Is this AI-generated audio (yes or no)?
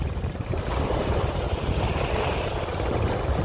no